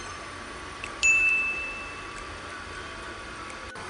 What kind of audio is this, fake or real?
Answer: fake